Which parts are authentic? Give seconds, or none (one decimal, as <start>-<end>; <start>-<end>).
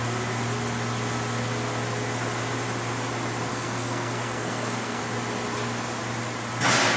0.0-3.5; 5.0-7.0